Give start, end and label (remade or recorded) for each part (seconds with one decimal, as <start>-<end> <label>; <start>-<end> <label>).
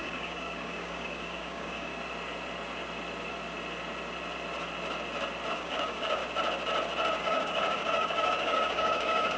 0.0-1.9 remade; 1.9-5.5 recorded; 5.5-6.2 remade; 6.2-7.2 recorded; 7.2-9.4 remade